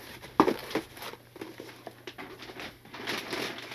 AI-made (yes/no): no